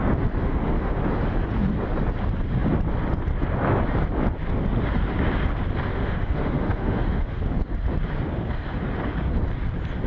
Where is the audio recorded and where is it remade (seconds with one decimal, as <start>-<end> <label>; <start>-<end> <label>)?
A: 0.0-0.4 recorded; 0.4-1.0 remade; 1.0-5.9 recorded; 5.9-7.4 remade; 7.4-10.1 recorded